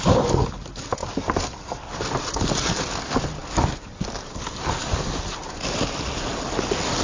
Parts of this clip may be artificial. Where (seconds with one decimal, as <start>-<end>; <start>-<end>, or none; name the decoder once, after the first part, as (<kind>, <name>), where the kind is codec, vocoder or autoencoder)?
none